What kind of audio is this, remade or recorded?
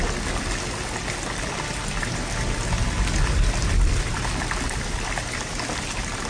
recorded